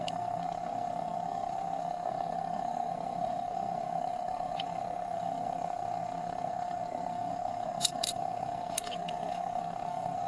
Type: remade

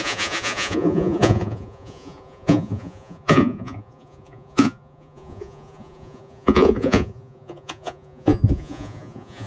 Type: remade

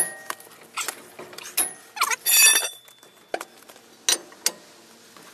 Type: recorded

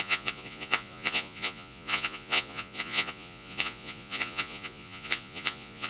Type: remade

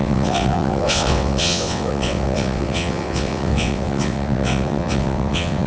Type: remade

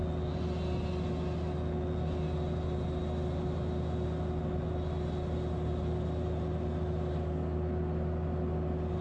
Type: recorded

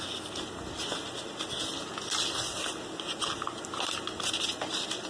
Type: recorded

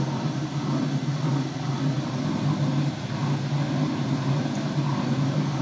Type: recorded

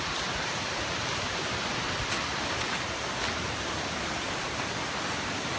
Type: recorded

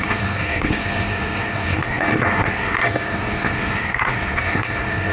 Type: remade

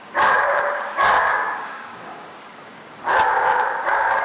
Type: remade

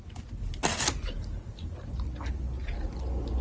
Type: recorded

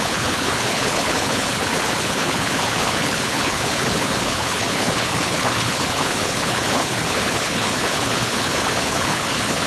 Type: remade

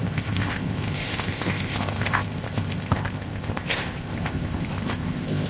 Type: remade